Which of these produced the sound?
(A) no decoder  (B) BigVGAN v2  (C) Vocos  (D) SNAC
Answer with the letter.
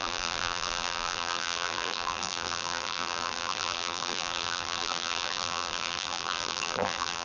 B